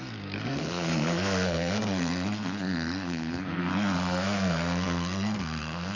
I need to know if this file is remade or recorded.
remade